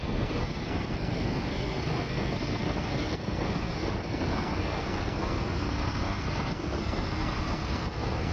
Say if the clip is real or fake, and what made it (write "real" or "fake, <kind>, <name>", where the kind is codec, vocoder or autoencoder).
fake, codec, SNAC